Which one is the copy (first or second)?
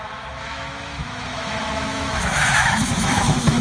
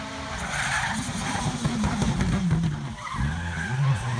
first